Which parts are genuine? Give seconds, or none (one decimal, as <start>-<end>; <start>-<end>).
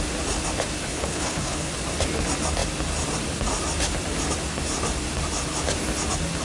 0.0-0.9; 1.7-6.4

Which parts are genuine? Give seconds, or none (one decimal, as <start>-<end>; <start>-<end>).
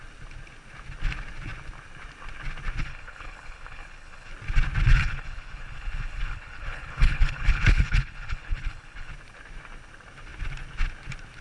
0.0-2.8; 4.3-4.9; 9.1-11.4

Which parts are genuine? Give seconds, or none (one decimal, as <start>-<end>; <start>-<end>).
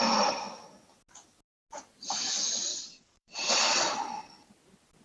0.0-2.7; 3.8-5.0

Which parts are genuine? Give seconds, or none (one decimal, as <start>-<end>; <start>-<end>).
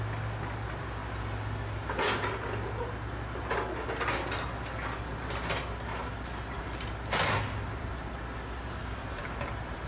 0.0-9.9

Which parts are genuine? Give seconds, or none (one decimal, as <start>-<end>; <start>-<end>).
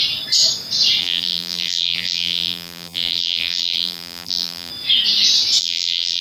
0.0-1.0; 4.7-5.6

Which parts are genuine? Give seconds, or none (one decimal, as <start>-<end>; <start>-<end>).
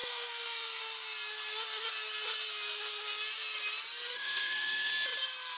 0.8-4.1; 4.9-5.6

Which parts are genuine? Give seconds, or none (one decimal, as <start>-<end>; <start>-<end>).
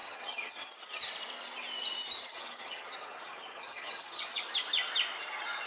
0.7-2.3; 4.4-5.7